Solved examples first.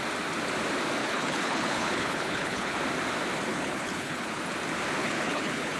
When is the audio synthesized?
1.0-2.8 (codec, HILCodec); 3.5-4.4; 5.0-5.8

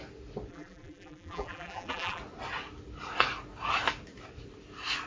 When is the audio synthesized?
0.5-2.2 (vocoder, BigVGAN v2)

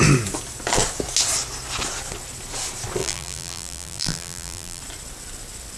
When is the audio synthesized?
3.0-4.8 (vocoder, BigVGAN v2)

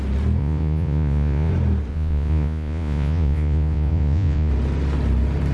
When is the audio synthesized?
0.4-1.5 (vocoder, Vocos); 1.9-4.5

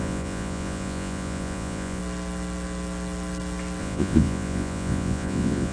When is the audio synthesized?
0.0-2.0 (vocoder, Vocos); 3.8-5.7